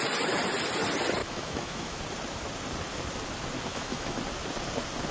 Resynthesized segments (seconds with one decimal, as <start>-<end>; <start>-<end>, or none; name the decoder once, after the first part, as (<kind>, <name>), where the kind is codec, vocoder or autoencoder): 1.2-2.0 (autoencoder, DAC-VAE); 3.7-4.2